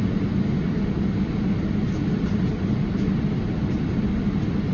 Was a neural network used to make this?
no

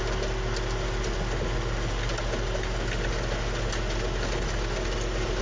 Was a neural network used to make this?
no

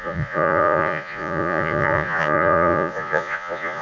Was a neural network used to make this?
yes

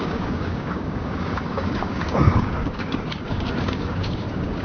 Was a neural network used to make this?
yes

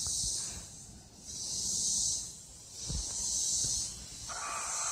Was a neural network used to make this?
no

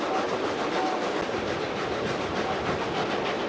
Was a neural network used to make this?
no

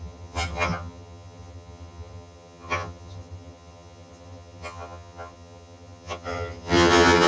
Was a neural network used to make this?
yes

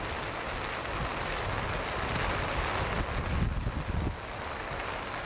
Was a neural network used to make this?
no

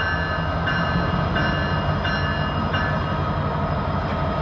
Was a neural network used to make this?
no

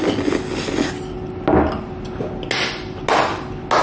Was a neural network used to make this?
no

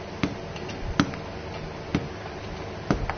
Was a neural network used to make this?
no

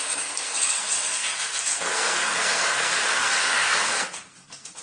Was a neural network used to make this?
yes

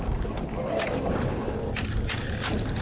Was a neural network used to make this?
no